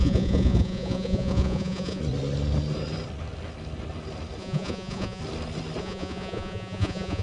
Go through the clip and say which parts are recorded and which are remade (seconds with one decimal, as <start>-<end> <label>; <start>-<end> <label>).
0.0-2.0 remade; 2.0-4.4 recorded; 4.4-5.2 remade; 5.2-5.8 recorded; 5.8-7.2 remade